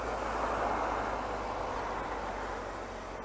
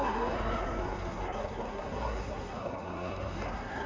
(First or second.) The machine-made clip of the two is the second